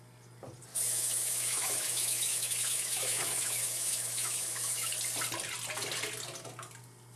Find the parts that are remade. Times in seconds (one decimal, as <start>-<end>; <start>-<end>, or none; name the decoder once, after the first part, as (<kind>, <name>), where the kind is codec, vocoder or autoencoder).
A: 0.7-4.9 (autoencoder, DAC-VAE)

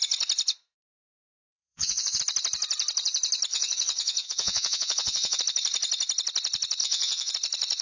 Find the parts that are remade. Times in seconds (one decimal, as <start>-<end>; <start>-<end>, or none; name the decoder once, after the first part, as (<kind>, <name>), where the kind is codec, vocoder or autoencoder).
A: 1.0-2.2 (vocoder, Vocos); 3.5-5.4; 6.8-7.3

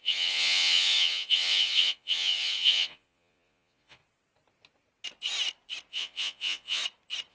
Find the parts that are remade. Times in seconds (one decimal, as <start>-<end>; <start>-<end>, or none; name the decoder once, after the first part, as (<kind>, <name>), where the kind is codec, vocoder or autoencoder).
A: 0.0-4.0 (vocoder, Vocos); 5.9-6.8

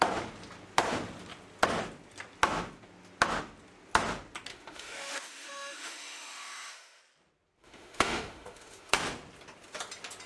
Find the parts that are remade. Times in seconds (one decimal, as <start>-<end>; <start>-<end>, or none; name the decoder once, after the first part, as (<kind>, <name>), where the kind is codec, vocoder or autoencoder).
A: 4.5-7.0 (autoencoder, DAC-VAE); 7.6-8.9